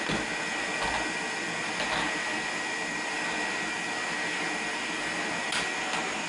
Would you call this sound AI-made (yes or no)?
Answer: no